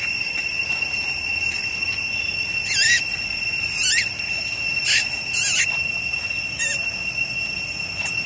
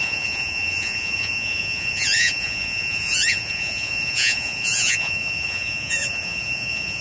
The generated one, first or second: second